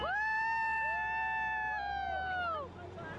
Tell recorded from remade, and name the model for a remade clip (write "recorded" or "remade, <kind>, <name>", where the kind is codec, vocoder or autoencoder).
recorded